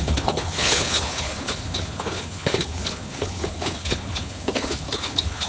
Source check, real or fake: fake